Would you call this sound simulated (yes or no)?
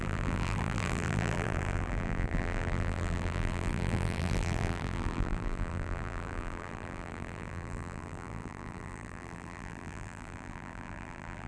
yes